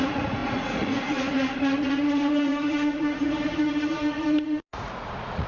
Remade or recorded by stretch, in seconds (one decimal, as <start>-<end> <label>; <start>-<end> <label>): 0.0-5.5 remade